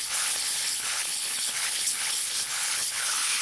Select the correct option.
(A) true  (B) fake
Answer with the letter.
B